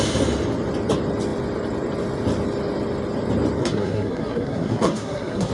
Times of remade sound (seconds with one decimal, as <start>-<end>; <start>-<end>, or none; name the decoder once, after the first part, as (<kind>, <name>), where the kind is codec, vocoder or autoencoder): 3.6-5.5 (codec, SNAC)